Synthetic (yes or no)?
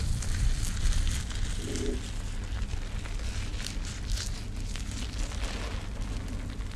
no